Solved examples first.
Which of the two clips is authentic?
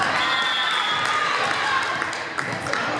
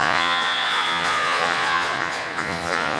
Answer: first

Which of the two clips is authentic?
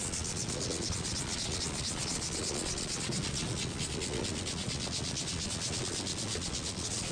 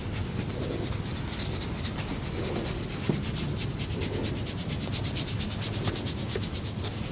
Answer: second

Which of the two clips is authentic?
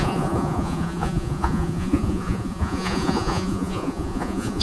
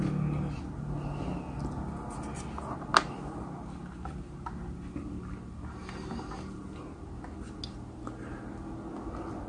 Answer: second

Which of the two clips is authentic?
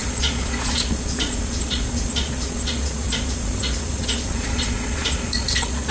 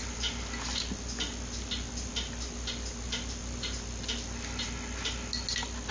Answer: second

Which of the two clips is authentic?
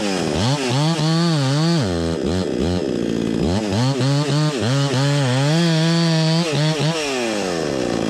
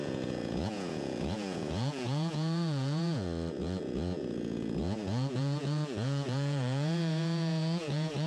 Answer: first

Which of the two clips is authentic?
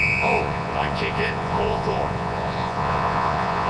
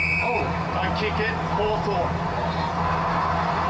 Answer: second